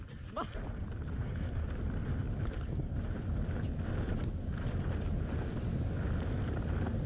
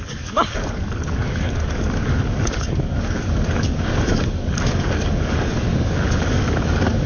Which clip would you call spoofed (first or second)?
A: second